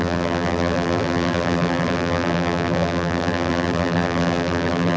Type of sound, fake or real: fake